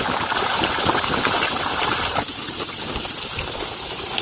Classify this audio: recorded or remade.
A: recorded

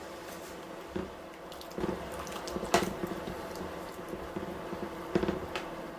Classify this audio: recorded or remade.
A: recorded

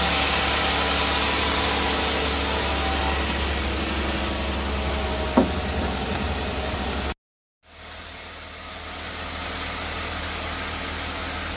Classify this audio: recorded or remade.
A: recorded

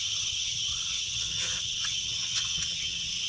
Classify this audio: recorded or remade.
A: remade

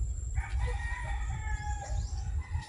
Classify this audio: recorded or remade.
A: recorded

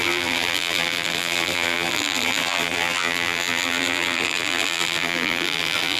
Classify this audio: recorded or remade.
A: remade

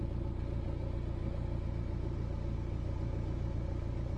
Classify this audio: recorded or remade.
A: recorded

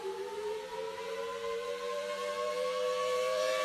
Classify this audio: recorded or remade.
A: remade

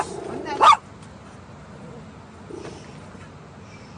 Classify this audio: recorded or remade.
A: recorded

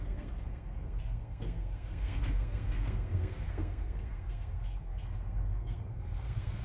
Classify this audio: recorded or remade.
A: remade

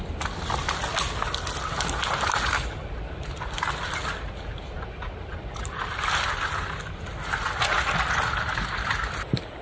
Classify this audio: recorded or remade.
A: recorded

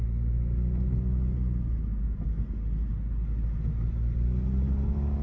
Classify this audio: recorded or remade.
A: recorded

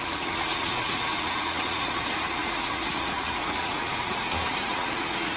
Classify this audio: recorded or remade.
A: remade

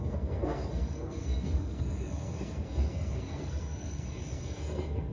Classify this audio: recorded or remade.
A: remade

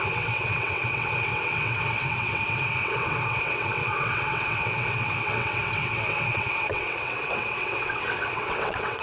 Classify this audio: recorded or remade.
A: remade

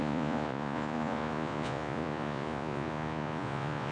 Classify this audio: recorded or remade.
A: remade